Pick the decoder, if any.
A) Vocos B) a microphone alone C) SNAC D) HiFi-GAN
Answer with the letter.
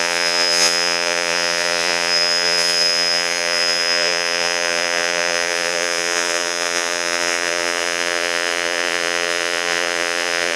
A